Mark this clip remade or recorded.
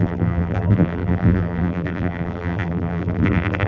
remade